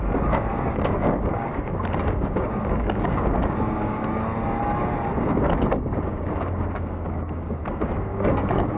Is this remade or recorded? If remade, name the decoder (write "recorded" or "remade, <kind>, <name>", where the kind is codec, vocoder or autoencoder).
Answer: remade, codec, DAC